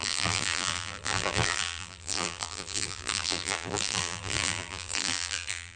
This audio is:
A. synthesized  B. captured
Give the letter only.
A